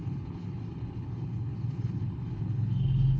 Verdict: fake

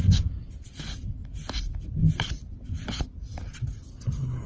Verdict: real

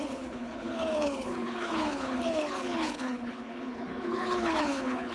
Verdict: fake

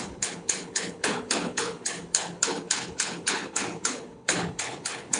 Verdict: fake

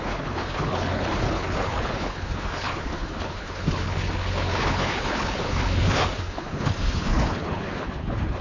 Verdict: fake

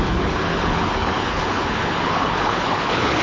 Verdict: fake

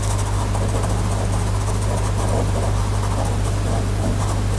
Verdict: real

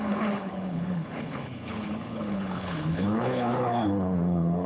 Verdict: fake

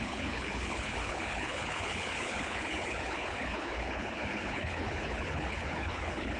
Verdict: fake